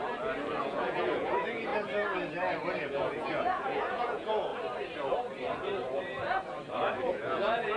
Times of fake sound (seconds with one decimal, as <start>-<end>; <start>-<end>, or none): 0.6-1.7; 2.8-4.5; 7.1-7.8